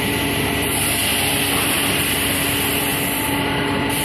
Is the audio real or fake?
real